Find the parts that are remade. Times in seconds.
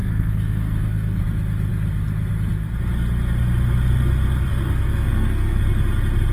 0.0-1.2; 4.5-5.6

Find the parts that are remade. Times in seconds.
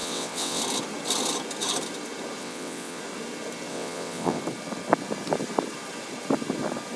0.0-0.6; 2.4-3.0; 3.7-4.4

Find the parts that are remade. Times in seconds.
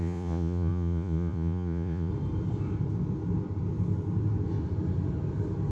0.0-2.1